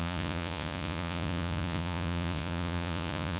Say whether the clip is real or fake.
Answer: fake